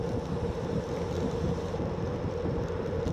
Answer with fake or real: real